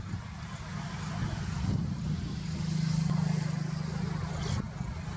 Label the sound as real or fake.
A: real